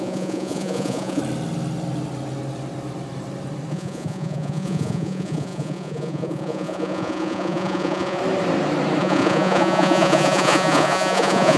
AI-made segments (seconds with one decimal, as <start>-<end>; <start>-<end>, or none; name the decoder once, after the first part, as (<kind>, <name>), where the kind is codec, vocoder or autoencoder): 0.0-1.2 (vocoder, Vocos); 3.7-8.2; 9.0-11.6